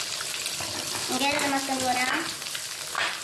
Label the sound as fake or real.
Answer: real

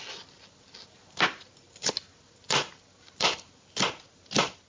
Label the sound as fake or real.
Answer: real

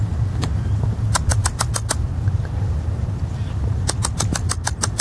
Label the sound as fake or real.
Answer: real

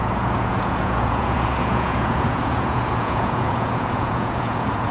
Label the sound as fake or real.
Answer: fake